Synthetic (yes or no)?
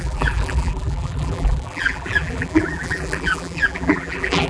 yes